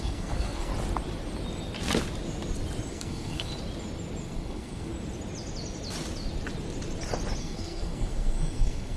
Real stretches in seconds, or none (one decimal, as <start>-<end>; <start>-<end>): 0.7-2.9; 3.5-4.2; 4.9-7.4